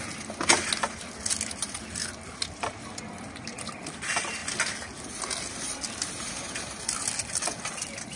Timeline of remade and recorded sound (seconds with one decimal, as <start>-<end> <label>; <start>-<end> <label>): 0.0-8.2 recorded